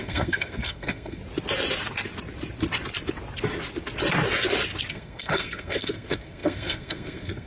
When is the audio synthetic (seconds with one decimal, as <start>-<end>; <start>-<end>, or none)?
0.0-1.2; 4.9-7.5